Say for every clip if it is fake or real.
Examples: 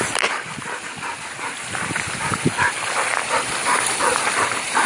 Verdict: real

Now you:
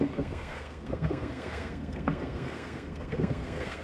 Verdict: fake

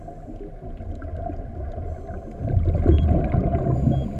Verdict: real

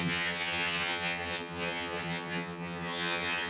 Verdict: fake